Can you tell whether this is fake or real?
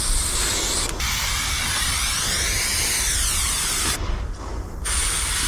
real